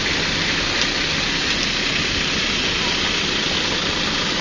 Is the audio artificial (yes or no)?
no